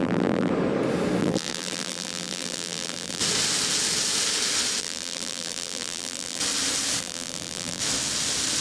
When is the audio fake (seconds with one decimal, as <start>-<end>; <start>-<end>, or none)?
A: 0.0-0.5; 1.2-3.2; 4.8-6.4; 7.0-7.8